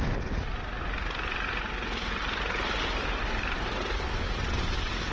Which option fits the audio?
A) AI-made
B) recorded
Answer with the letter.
B